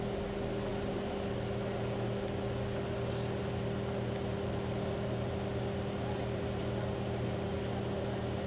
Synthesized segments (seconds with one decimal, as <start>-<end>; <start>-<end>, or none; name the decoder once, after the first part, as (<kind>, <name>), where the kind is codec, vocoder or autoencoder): none